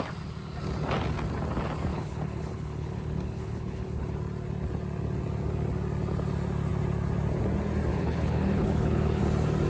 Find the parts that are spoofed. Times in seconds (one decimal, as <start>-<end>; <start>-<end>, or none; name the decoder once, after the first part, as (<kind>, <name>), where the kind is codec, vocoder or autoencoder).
1.9-4.1 (codec, HILCodec); 7.9-9.2